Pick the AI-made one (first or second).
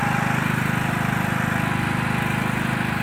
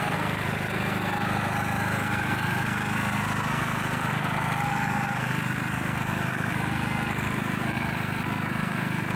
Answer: second